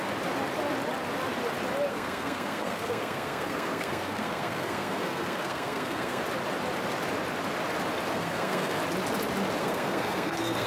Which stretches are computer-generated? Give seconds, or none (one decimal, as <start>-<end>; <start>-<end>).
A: 1.9-6.2; 8.1-8.8; 9.6-10.7